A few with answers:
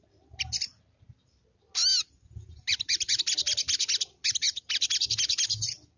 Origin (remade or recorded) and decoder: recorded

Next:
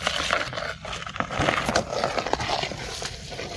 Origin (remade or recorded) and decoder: recorded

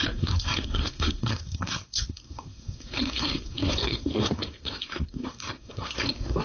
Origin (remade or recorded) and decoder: remade, codec, SNAC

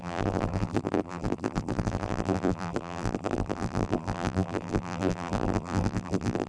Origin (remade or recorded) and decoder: remade, vocoder, BigVGAN v2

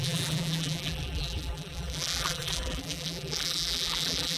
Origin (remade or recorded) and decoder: remade, vocoder, BigVGAN v2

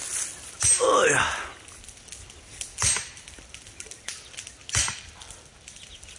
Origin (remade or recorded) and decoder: recorded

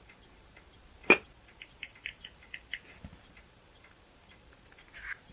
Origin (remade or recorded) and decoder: remade, vocoder, BigVGAN v2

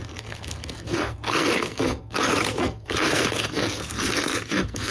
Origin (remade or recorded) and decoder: remade, codec, SNAC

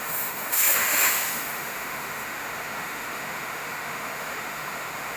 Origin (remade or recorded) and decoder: remade, autoencoder, DAC-VAE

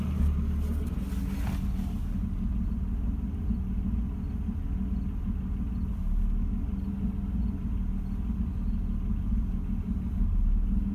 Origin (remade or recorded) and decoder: recorded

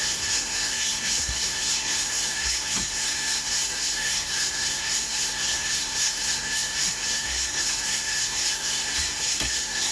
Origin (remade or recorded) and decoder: remade, codec, SNAC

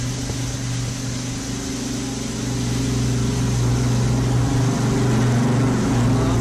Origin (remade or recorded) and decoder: recorded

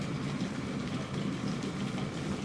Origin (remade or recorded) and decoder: recorded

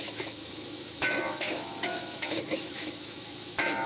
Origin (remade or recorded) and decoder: remade, autoencoder, DAC-VAE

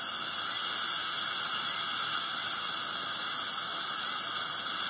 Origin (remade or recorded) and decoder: recorded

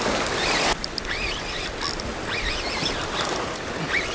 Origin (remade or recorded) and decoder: recorded